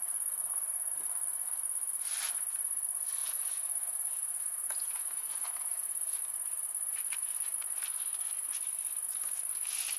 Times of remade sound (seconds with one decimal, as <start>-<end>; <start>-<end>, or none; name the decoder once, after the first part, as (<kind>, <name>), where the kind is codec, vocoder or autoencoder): 3.2-6.2 (vocoder, Vocos)